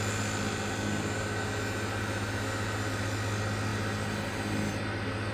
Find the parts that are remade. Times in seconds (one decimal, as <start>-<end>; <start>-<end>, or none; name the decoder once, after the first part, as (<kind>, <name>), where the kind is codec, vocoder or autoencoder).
none